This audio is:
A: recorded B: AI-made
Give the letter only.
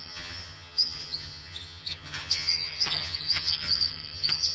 B